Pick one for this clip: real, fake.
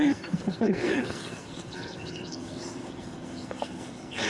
fake